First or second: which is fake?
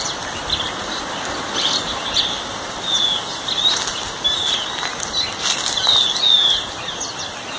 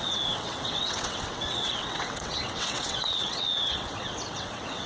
second